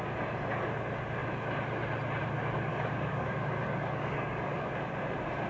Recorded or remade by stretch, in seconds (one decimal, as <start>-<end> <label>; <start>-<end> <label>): 0.0-2.7 recorded; 2.7-4.7 remade; 4.7-5.5 recorded